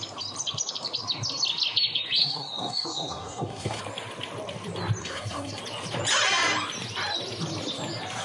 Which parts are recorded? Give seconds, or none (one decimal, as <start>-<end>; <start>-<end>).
0.0-2.2; 3.8-5.0; 5.6-8.2